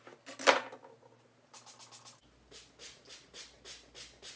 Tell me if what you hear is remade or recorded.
recorded